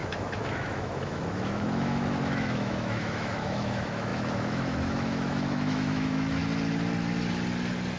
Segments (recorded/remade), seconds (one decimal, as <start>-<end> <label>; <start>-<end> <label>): 0.0-6.4 remade; 6.4-8.0 recorded